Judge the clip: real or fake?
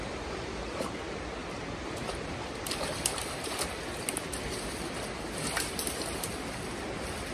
real